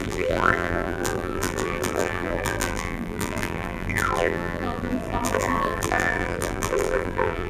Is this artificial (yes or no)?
yes